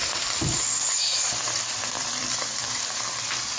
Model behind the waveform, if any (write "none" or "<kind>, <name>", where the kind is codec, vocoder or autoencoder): vocoder, BigVGAN v2